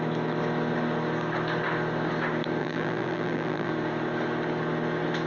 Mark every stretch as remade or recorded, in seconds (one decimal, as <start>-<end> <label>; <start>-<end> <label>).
0.0-2.6 recorded; 2.6-3.7 remade; 3.7-5.3 recorded